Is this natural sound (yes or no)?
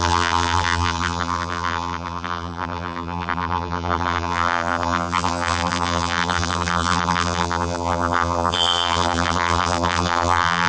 no